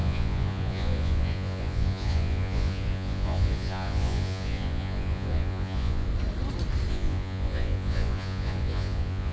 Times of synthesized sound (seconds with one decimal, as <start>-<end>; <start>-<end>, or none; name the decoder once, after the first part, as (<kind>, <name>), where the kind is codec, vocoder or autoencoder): 0.0-6.1 (vocoder, Vocos); 6.9-9.3